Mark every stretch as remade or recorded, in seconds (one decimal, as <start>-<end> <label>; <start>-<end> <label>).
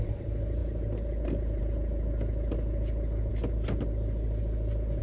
0.0-5.0 recorded